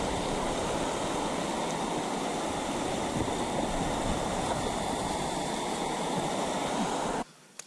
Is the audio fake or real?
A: real